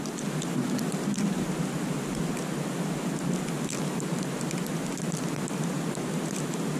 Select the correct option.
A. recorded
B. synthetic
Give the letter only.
A